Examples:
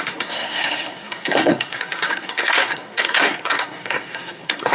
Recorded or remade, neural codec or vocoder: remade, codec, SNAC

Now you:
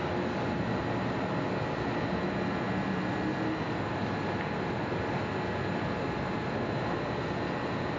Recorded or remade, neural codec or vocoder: recorded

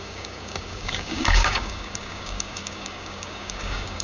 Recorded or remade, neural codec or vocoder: remade, codec, DAC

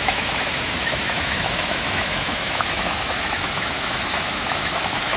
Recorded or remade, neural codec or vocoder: remade, autoencoder, DAC-VAE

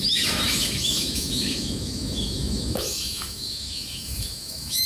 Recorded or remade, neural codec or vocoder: remade, autoencoder, DAC-VAE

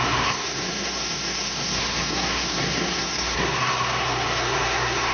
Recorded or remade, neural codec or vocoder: remade, codec, SNAC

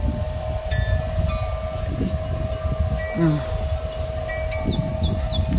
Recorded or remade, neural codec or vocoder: recorded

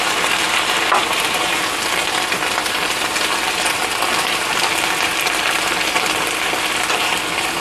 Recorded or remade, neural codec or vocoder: remade, vocoder, BigVGAN v2